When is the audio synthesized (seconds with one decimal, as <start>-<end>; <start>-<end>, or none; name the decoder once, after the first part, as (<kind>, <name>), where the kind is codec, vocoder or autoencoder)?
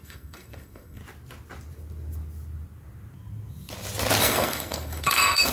0.0-1.0 (codec, SNAC); 4.2-5.5